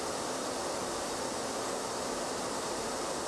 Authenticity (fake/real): fake